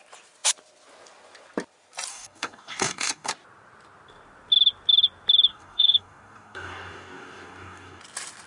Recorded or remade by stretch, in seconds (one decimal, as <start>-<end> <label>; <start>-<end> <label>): 0.0-2.1 recorded; 2.1-3.3 remade; 3.3-5.5 recorded; 5.5-8.0 remade; 8.0-8.5 recorded